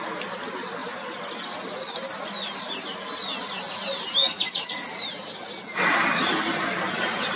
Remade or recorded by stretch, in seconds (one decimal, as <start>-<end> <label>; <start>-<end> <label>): 0.0-7.4 recorded